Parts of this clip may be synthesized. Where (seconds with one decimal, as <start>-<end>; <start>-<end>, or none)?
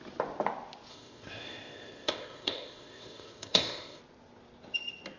0.9-4.0